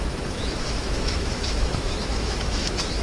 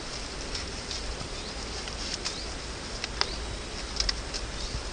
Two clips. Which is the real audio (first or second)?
second